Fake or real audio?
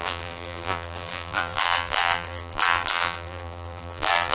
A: fake